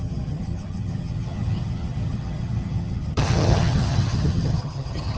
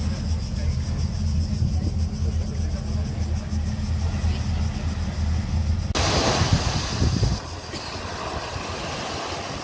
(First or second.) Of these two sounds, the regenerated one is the first